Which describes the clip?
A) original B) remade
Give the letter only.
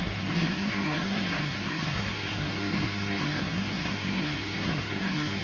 B